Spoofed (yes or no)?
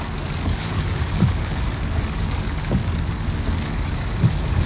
yes